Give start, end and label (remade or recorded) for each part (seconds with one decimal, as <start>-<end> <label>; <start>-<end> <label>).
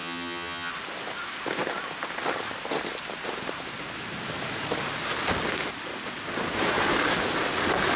0.0-0.7 remade; 0.7-8.0 recorded